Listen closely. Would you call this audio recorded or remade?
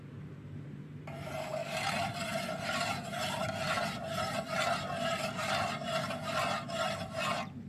remade